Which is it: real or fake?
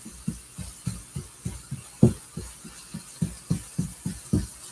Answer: real